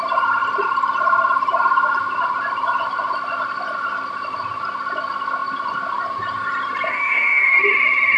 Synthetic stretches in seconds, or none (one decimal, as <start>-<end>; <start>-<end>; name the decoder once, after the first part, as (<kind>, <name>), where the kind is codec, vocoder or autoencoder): 6.9-7.6 (codec, DAC)